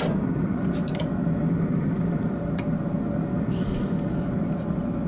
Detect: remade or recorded recorded